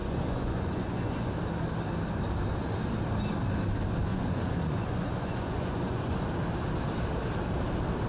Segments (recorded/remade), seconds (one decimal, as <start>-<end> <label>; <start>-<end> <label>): 0.0-1.3 remade; 1.3-4.1 recorded; 4.1-6.3 remade; 6.3-8.1 recorded